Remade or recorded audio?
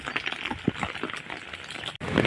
recorded